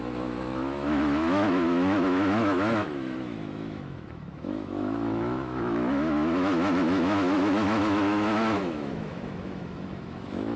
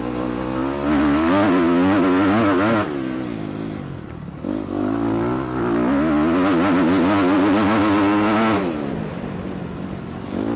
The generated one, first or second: first